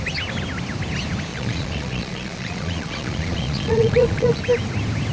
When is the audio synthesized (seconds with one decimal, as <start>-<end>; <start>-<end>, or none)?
1.3-4.4